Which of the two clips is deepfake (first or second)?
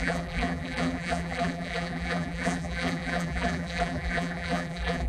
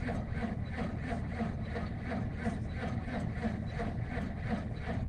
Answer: first